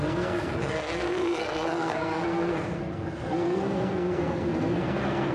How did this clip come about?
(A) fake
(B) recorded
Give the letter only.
A